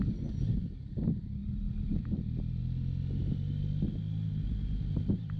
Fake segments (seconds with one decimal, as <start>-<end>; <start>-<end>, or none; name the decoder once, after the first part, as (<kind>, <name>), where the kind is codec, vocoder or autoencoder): none